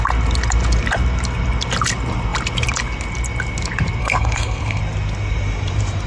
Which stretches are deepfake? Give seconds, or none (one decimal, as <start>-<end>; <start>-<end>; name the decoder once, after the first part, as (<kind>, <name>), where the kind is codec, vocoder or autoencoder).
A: 4.0-4.8 (codec, SNAC)